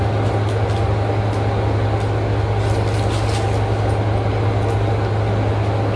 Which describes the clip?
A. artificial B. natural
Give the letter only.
B